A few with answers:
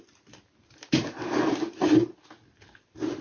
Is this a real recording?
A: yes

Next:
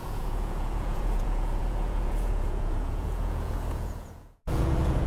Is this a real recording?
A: no